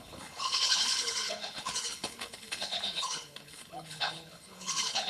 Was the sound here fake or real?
fake